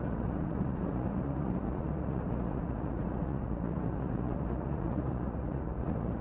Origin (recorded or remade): remade